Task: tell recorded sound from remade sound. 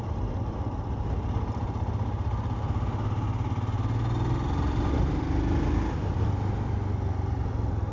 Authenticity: recorded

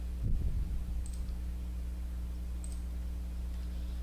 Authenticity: recorded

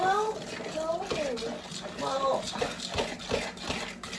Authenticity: recorded